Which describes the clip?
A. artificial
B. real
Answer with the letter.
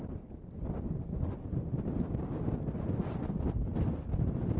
B